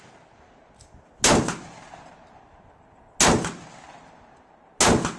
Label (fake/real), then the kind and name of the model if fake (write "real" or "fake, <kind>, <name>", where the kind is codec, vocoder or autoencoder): real